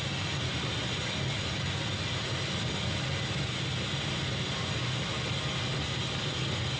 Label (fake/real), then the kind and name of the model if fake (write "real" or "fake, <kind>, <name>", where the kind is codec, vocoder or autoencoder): real